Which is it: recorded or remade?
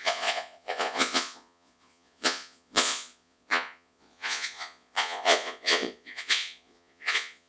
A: remade